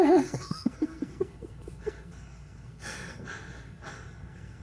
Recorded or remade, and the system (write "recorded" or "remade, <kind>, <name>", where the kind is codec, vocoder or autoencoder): remade, codec, SNAC